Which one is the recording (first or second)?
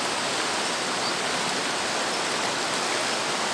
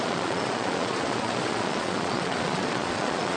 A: first